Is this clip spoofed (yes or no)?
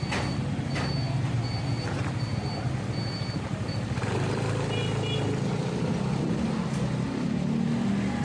no